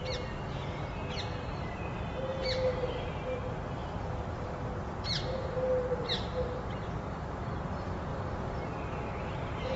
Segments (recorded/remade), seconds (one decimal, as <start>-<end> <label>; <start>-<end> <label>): 0.0-3.8 recorded; 3.8-4.7 remade; 4.7-8.1 recorded; 8.1-9.8 remade